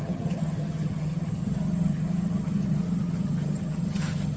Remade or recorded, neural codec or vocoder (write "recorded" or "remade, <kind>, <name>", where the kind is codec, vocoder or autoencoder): remade, vocoder, HiFi-GAN